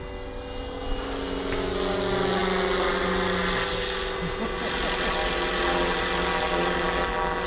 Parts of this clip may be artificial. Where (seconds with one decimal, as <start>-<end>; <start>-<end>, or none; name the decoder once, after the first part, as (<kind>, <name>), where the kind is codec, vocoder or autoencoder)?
none